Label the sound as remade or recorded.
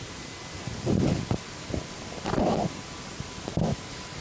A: recorded